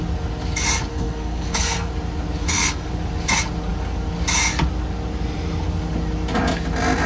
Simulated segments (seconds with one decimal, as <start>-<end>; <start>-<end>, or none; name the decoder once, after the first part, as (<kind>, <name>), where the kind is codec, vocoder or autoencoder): 0.9-1.9 (codec, SNAC); 2.4-2.9